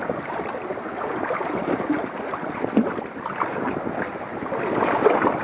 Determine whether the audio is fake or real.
real